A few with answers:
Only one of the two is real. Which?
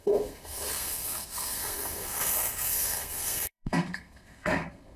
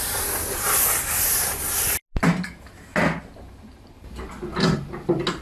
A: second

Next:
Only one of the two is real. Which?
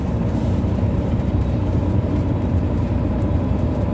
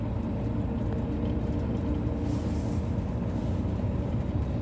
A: second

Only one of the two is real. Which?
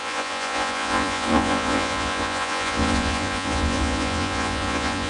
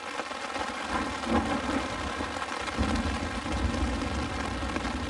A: second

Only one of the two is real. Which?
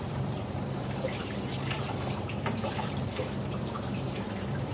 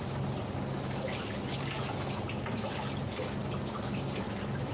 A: second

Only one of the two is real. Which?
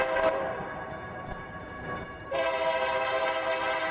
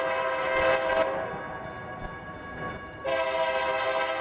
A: second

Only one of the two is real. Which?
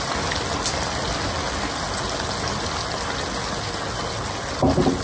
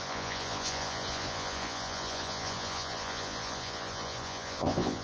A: first